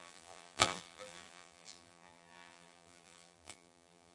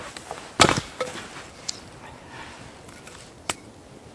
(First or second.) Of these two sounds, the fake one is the first